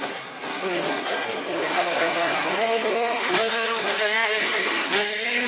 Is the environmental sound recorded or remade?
remade